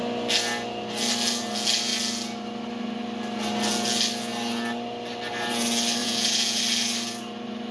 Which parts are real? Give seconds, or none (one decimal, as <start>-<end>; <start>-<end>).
0.0-6.0; 6.6-7.7